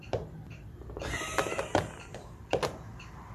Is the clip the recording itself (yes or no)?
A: no